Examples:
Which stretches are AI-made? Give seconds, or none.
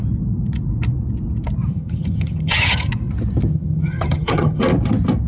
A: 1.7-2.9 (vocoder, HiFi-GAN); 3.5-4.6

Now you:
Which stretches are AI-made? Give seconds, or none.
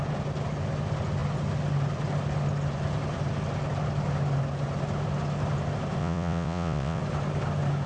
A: 6.0-7.0 (vocoder, Vocos)